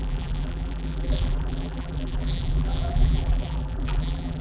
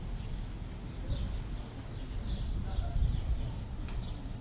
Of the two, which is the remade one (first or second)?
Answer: first